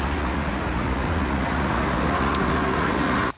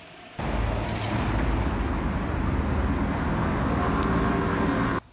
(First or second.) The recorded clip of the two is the second